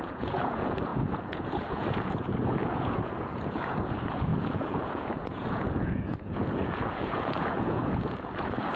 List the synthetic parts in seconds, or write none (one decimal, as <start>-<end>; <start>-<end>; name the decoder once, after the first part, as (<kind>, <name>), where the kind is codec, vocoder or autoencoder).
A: 0.0-8.8 (vocoder, Vocos)